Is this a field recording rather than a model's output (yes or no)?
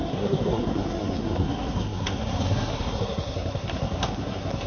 no